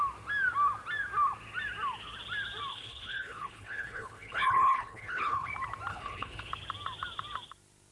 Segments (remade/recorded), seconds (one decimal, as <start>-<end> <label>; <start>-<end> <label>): 0.0-2.7 recorded; 2.7-5.5 remade; 5.5-5.9 recorded; 5.9-6.5 remade; 6.5-7.9 recorded